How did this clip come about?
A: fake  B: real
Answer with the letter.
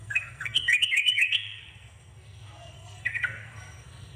A